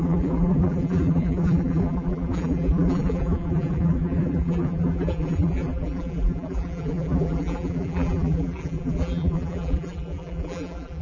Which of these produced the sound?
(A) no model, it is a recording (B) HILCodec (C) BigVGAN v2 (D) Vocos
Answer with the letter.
C